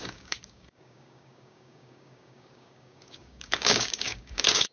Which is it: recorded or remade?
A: remade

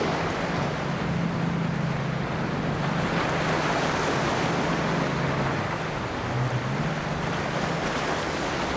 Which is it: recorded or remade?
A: recorded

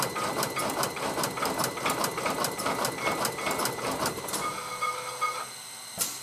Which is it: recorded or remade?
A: recorded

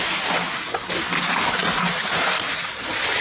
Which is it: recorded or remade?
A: recorded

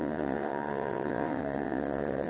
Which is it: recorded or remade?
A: remade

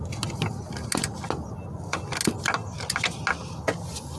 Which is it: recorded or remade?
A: recorded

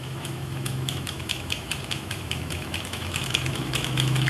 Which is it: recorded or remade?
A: remade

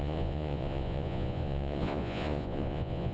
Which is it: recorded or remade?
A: remade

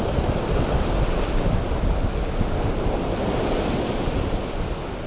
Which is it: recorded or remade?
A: recorded